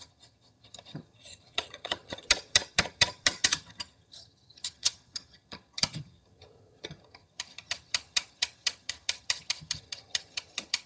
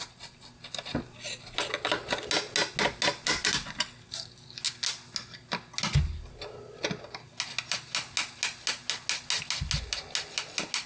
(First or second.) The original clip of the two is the second